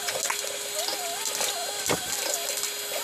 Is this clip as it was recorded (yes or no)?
yes